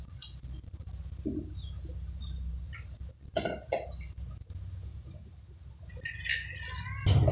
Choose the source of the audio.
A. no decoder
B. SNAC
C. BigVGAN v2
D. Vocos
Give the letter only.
A